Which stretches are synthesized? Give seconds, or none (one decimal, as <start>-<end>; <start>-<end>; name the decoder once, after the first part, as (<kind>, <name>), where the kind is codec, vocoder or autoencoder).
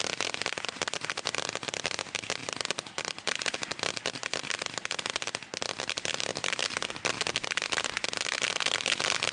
none